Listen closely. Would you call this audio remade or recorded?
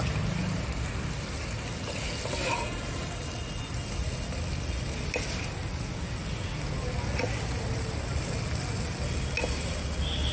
recorded